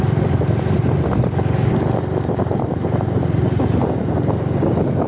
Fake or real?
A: real